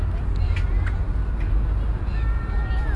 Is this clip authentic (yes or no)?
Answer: yes